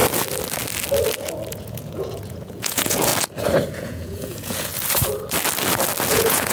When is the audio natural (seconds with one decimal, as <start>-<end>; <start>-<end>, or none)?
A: 0.0-1.5; 3.1-3.7; 4.7-6.1

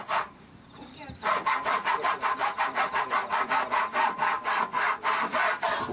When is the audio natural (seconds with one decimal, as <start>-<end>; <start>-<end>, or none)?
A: 2.9-5.9

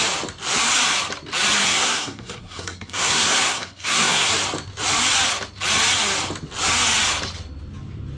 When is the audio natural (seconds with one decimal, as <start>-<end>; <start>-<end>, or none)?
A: 0.0-1.6; 4.3-8.2

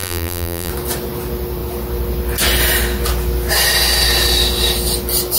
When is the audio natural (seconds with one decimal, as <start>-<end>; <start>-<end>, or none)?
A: 0.7-5.4